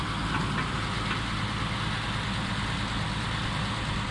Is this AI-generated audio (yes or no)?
no